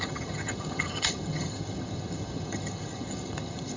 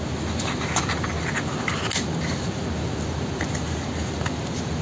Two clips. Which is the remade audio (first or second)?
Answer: first